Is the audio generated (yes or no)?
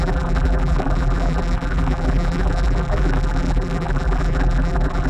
yes